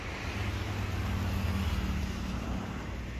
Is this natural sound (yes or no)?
yes